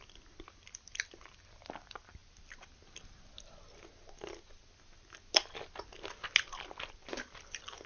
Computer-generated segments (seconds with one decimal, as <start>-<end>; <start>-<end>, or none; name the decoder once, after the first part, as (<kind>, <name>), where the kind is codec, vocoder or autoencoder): 0.0-2.2 (vocoder, BigVGAN v2); 6.9-7.9

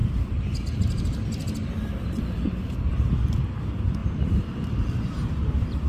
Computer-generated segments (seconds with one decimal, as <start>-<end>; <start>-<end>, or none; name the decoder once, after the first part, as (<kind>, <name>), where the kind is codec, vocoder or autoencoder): 4.0-5.9 (vocoder, BigVGAN v2)

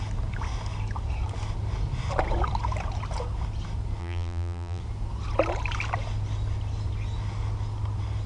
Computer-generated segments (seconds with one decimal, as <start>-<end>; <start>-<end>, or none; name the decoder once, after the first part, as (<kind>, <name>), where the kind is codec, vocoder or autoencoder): 4.0-4.8 (vocoder, BigVGAN v2)

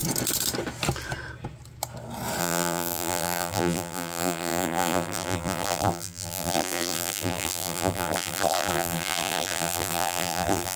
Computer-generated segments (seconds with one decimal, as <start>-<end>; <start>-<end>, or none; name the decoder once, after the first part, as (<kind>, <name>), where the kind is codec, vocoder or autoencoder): 2.4-10.8 (vocoder, BigVGAN v2)

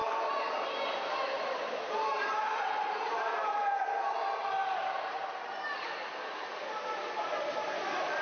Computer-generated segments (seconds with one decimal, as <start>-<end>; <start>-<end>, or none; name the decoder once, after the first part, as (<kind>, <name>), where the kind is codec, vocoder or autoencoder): 0.0-3.8 (vocoder, BigVGAN v2); 4.6-6.5

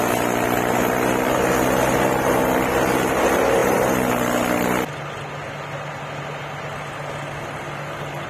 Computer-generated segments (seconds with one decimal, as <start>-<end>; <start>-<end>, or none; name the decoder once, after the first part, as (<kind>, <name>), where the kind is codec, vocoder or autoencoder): none

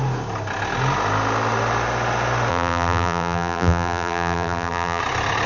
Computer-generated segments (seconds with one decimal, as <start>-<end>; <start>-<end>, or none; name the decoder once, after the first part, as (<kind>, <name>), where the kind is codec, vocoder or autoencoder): 2.5-5.0 (vocoder, BigVGAN v2)